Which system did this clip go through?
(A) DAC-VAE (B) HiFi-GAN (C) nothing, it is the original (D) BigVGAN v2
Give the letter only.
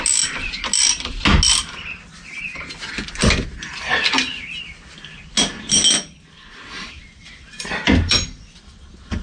C